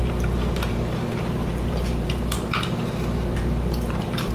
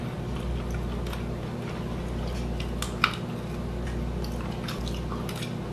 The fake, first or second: first